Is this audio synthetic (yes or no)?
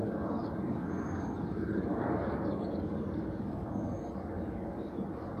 yes